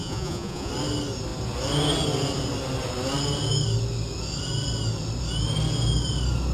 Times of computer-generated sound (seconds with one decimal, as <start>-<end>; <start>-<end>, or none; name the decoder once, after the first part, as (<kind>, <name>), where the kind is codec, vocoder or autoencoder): 0.0-0.7 (vocoder, Vocos)